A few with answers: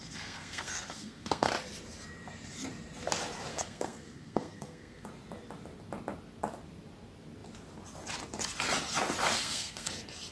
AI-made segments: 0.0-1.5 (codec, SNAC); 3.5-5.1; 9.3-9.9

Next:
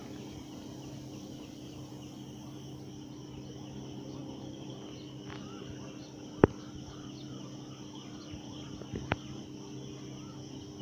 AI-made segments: none

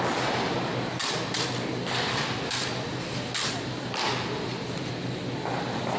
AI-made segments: none

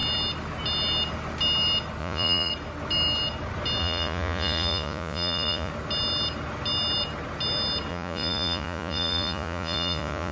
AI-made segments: 2.0-2.5 (vocoder, Vocos); 3.8-5.7; 7.9-10.3

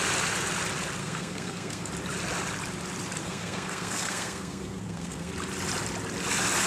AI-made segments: 1.0-1.9 (codec, SNAC); 3.2-5.3

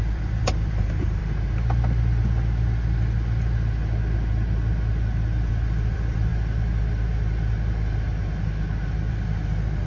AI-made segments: 0.0-1.2 (vocoder, BigVGAN v2); 5.5-6.3; 9.1-9.9

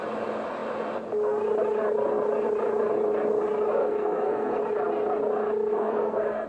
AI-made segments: 3.8-4.6 (codec, SNAC); 5.7-6.5